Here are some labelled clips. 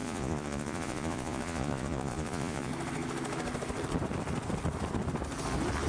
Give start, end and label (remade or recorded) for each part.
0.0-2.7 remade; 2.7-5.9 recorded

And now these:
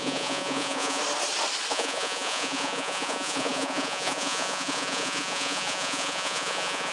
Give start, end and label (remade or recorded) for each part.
0.0-1.0 remade; 1.0-1.7 recorded; 1.7-6.9 remade

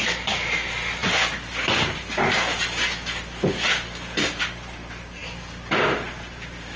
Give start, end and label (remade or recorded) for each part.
0.0-6.8 recorded